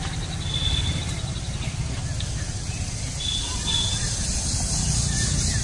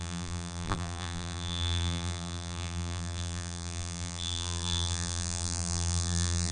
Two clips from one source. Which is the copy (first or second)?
second